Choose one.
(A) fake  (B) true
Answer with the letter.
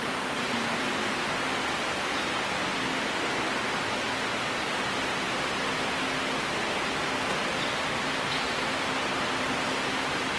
B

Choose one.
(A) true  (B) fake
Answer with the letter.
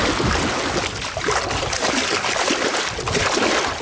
A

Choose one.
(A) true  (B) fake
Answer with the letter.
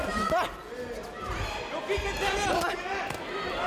A